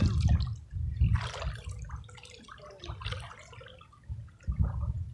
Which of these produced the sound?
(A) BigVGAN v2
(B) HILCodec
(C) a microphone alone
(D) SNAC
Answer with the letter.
C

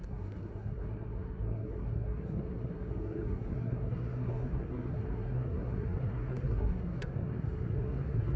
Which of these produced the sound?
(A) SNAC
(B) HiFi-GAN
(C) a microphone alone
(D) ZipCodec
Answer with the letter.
A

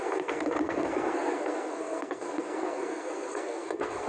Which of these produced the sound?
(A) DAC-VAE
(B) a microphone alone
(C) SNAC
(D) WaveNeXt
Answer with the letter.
C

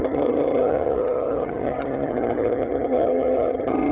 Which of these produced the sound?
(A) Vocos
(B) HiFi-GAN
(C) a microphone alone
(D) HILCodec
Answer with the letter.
B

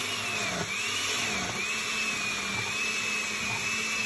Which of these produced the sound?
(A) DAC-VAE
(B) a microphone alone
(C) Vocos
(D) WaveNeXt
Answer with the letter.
B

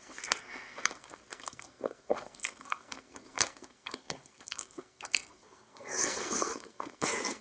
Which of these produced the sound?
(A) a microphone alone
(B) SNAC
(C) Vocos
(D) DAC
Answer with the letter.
B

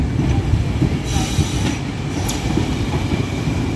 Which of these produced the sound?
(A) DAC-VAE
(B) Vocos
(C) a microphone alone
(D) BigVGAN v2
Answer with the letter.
C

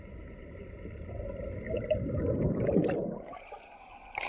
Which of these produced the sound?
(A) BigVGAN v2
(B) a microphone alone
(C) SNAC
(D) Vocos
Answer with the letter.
A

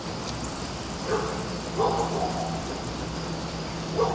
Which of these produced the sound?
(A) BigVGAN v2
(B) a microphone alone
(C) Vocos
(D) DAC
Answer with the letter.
B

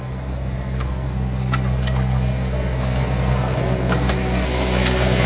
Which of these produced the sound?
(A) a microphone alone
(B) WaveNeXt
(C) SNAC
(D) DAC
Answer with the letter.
C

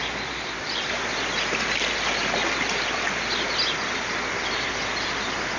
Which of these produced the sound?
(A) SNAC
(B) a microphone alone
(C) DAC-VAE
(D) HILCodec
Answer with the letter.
B